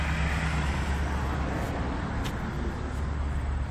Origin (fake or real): real